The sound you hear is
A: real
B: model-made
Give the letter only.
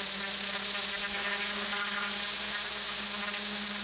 A